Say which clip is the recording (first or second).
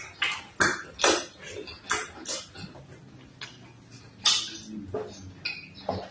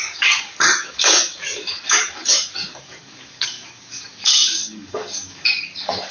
first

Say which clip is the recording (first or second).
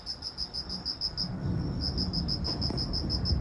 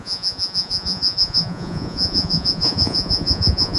first